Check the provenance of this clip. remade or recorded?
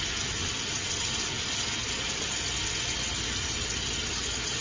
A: recorded